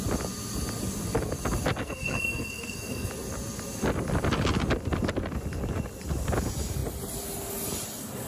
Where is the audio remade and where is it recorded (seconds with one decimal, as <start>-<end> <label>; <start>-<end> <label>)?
0.0-1.8 recorded; 1.8-3.1 remade; 3.1-8.3 recorded

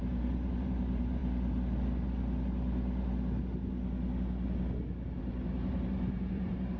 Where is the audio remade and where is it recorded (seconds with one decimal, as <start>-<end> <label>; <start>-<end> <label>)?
0.0-1.2 remade; 1.2-5.2 recorded; 5.2-6.8 remade

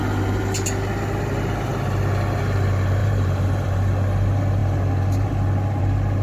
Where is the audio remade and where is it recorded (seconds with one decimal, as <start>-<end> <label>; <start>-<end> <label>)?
0.0-3.0 recorded; 3.0-3.9 remade; 3.9-6.2 recorded